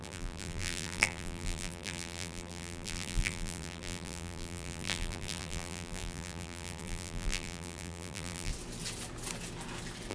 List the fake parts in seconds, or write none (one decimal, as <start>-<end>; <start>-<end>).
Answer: 0.0-8.5